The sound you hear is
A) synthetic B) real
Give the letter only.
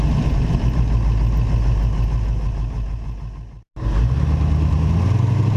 B